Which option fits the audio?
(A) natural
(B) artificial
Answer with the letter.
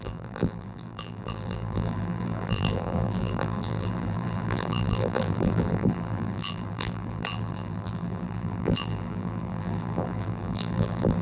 B